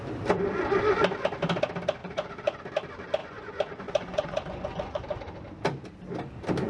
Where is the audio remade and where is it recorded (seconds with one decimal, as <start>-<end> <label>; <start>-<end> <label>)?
0.0-2.0 recorded; 2.0-2.6 remade; 2.6-3.2 recorded; 3.2-5.1 remade; 5.1-6.7 recorded